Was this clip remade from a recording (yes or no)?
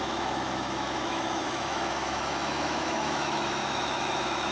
yes